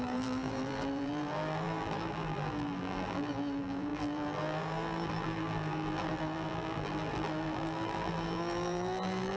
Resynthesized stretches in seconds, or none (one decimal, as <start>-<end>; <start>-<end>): 0.0-9.4